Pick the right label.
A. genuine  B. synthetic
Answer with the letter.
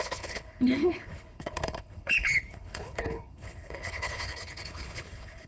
B